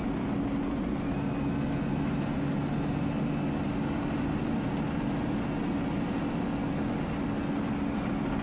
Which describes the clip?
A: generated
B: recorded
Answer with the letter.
B